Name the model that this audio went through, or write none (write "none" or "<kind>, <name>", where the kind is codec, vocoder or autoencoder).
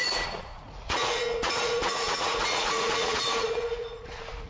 vocoder, Vocos